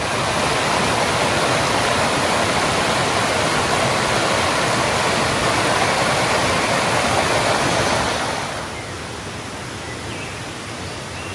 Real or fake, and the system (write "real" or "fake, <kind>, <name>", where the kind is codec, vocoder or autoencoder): real